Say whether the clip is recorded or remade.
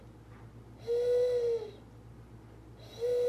recorded